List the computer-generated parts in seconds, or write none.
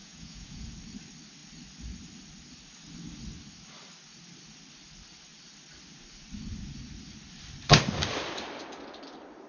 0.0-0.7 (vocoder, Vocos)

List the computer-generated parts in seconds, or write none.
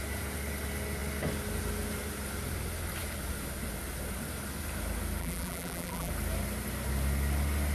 5.2-6.1 (vocoder, BigVGAN v2)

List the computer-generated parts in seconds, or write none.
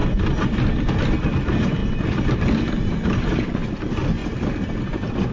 1.2-4.2 (vocoder, BigVGAN v2)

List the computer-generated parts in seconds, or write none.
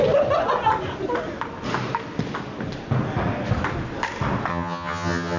4.5-5.4 (vocoder, HiFi-GAN)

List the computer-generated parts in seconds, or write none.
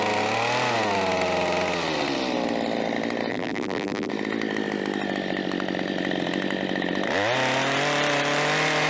3.3-4.1 (vocoder, BigVGAN v2)